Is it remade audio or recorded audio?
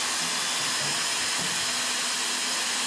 recorded